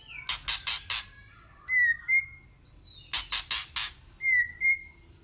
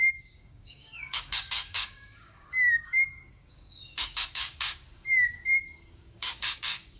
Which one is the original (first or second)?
first